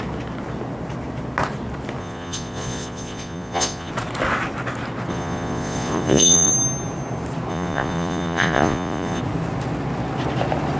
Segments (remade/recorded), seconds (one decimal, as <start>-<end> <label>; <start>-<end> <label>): 0.0-2.0 recorded; 2.0-3.9 remade; 3.9-5.1 recorded; 5.1-6.5 remade; 6.5-7.5 recorded; 7.5-9.2 remade; 9.2-10.8 recorded